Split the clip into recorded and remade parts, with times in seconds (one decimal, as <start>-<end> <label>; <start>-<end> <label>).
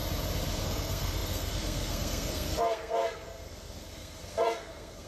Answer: 0.0-0.6 recorded; 0.6-5.1 remade